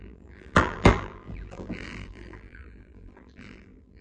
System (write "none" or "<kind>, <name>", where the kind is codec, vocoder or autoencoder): vocoder, BigVGAN v2